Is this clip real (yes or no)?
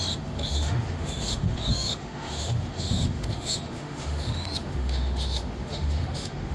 no